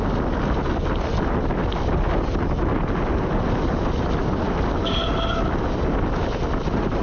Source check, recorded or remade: recorded